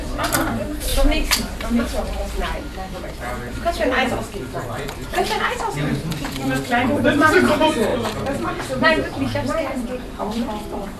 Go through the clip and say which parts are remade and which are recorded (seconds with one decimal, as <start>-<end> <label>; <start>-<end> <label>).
0.0-7.9 remade; 7.9-8.6 recorded; 8.6-11.0 remade